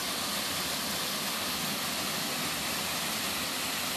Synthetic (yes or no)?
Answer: no